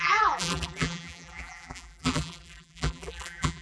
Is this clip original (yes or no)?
no